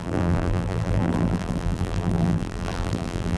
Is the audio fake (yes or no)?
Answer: yes